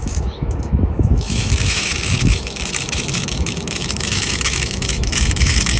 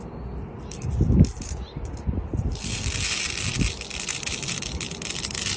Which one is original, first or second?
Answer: second